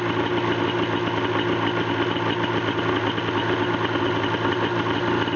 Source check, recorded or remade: recorded